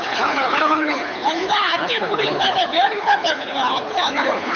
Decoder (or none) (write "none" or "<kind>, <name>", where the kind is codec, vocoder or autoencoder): codec, HILCodec